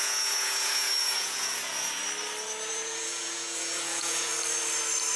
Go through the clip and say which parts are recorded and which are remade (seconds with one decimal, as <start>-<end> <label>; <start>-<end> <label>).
0.0-2.0 remade; 2.0-2.7 recorded; 2.7-4.3 remade; 4.3-5.2 recorded